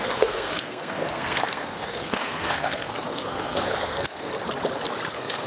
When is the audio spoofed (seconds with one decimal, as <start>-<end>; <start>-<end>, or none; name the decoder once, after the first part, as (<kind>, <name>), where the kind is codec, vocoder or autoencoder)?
0.0-4.3 (codec, SNAC); 5.1-5.5